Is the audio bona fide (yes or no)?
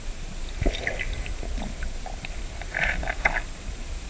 yes